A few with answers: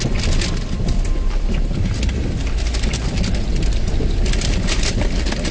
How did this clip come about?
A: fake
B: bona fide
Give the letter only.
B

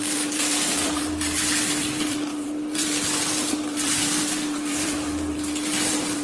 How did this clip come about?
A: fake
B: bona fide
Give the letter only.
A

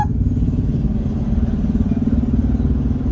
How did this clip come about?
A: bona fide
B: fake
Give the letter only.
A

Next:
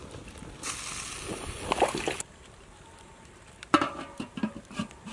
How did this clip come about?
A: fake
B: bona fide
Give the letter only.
B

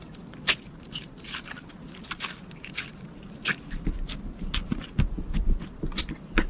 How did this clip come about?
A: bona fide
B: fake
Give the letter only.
A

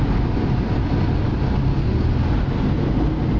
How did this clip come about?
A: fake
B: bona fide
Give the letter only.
B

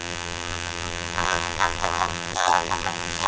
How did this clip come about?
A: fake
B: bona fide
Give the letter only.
A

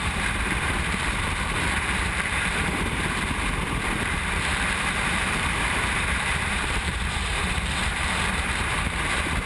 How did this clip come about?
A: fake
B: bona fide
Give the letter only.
A